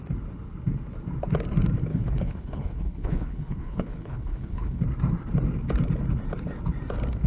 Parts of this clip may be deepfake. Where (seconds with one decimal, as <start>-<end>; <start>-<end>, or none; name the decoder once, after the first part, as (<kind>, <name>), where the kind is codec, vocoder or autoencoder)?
1.9-4.8 (codec, HILCodec)